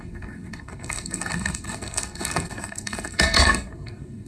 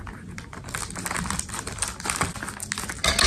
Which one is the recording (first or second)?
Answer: second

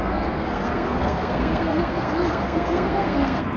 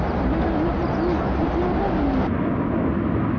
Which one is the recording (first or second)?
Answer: second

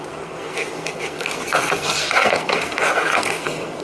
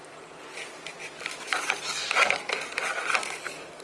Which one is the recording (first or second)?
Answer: second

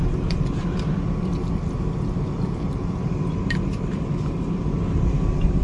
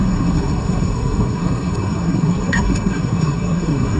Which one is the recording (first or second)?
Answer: first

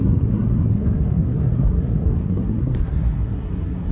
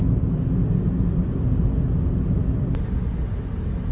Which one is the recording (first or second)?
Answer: second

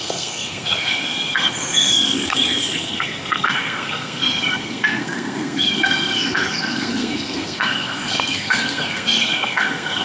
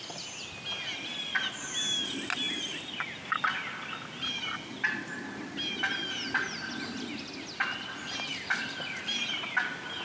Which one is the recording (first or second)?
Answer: second